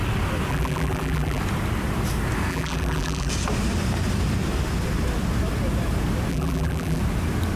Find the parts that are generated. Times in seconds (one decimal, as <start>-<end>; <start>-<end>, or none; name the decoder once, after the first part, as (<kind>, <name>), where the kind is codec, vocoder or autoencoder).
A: 0.5-1.4 (vocoder, BigVGAN v2); 2.5-3.3; 6.3-7.0